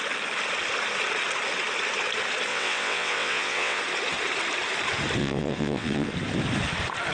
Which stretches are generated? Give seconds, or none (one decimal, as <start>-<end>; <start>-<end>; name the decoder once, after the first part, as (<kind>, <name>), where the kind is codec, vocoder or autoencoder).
2.5-3.8 (vocoder, WaveNeXt); 5.2-6.1